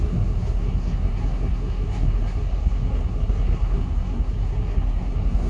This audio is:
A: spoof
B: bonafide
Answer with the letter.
A